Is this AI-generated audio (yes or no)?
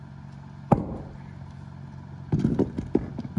no